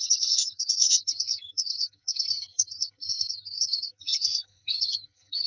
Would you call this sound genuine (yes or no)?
no